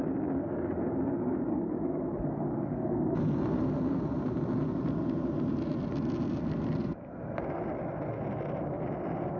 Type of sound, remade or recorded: recorded